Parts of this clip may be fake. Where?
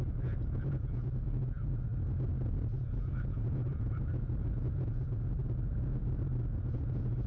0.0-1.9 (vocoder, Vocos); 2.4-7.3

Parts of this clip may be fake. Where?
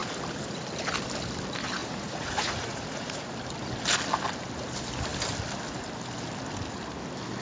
1.8-3.3 (vocoder, Vocos)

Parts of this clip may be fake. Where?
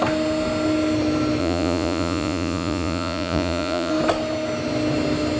1.4-3.9 (vocoder, Vocos)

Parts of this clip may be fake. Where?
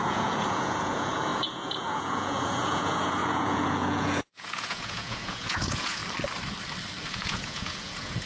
0.0-6.0 (vocoder, Vocos); 7.1-8.3